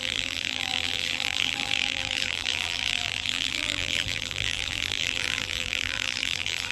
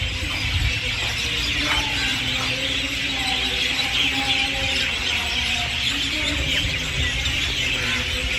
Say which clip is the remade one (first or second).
first